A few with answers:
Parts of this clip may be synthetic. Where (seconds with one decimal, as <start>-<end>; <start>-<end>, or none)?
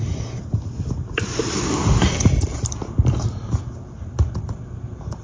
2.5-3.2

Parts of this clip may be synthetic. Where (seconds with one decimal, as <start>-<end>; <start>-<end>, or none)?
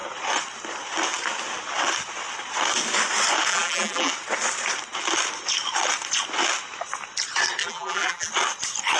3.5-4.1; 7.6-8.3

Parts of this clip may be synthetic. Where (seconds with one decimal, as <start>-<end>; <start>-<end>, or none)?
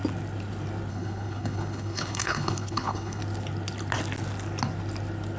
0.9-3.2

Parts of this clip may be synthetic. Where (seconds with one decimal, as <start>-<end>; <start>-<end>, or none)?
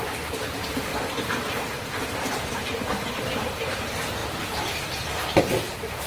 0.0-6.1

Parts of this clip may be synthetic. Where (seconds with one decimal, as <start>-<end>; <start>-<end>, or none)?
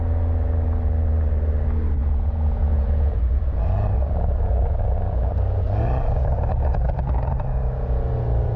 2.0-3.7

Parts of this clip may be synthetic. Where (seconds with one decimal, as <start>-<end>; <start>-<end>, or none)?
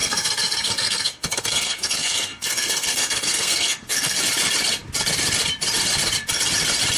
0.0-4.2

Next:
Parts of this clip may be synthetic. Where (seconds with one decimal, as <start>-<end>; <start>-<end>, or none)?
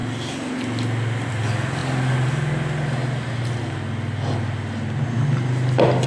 none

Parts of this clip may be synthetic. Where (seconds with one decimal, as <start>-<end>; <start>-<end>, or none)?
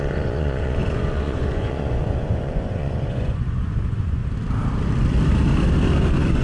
0.0-4.2; 6.0-6.4